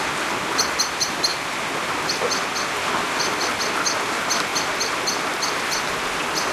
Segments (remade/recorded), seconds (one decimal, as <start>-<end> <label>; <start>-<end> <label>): 0.0-6.5 recorded